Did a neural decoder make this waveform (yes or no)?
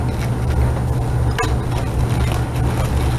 no